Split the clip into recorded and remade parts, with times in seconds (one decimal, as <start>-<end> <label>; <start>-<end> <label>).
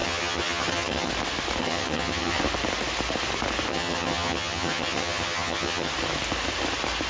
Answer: 0.0-1.1 remade; 1.1-1.6 recorded; 1.6-2.4 remade; 2.4-3.7 recorded; 3.7-5.9 remade; 5.9-7.1 recorded